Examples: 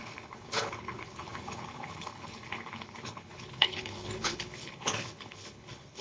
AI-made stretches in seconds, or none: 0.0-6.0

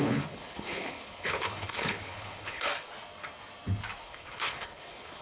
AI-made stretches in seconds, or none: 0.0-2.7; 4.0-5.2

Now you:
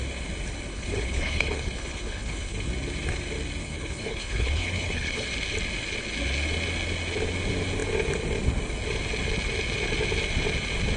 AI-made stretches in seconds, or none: 0.7-2.7; 3.6-5.3

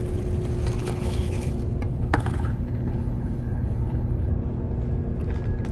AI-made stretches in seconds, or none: 0.8-1.5; 1.9-4.3

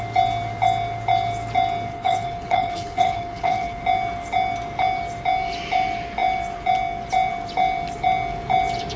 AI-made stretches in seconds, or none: 1.9-3.8

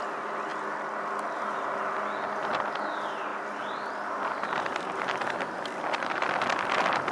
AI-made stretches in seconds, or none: none

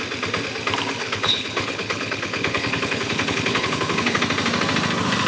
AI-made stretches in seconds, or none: 1.0-4.2